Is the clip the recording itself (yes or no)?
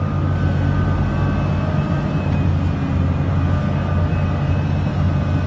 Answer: yes